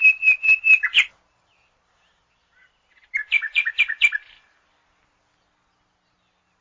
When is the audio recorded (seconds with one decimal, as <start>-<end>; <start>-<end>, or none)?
0.0-1.1; 5.1-6.6